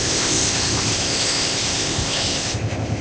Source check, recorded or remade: remade